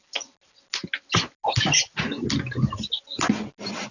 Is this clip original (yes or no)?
yes